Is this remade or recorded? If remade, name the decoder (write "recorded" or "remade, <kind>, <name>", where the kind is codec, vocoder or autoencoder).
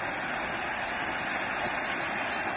recorded